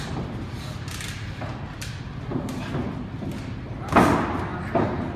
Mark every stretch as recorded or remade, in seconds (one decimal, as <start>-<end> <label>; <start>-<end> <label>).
0.0-5.2 recorded